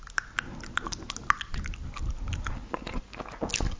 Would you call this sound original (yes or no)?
yes